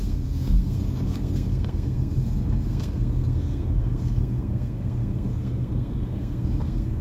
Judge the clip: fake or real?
fake